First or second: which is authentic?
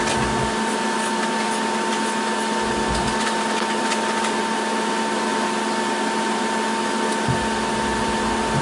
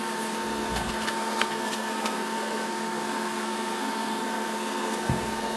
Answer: first